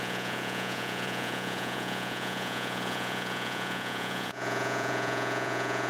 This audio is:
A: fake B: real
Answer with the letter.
A